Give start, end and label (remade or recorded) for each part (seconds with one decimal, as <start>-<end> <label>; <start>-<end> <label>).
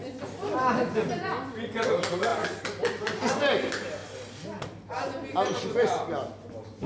0.0-6.9 recorded